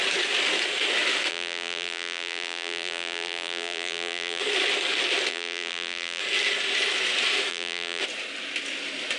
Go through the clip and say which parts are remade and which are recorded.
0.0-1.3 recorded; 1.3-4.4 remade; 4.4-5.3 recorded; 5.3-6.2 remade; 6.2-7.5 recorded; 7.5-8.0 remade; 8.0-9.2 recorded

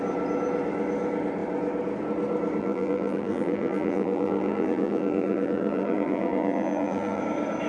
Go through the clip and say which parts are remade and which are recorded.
0.0-2.6 recorded; 2.6-7.2 remade; 7.2-7.7 recorded

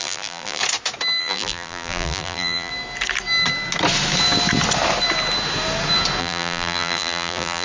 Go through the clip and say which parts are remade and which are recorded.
0.0-0.6 remade; 0.6-1.2 recorded; 1.2-2.7 remade; 2.7-6.2 recorded; 6.2-7.6 remade

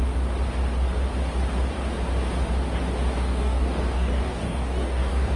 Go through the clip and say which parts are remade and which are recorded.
0.0-3.2 recorded; 3.2-5.4 remade

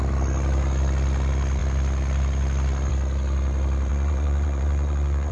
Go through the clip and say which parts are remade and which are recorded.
0.0-3.9 recorded; 3.9-5.3 remade

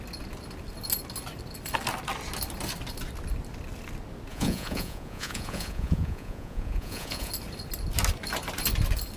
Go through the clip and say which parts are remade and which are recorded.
0.0-4.3 recorded; 4.3-7.3 remade; 7.3-9.2 recorded

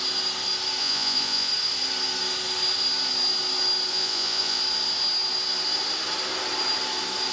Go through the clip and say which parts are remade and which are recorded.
0.0-0.8 recorded; 0.8-1.5 remade; 1.5-3.9 recorded; 3.9-4.6 remade; 4.6-7.3 recorded

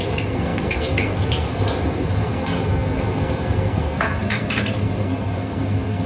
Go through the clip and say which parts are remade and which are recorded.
0.0-6.1 remade